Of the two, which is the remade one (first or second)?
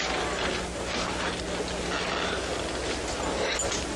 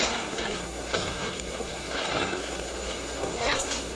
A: second